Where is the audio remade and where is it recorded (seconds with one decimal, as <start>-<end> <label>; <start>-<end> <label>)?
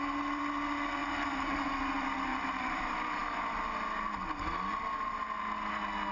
0.0-1.0 recorded; 1.0-1.7 remade; 1.7-2.3 recorded; 2.3-2.8 remade; 2.8-6.1 recorded